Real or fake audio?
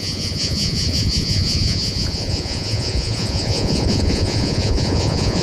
fake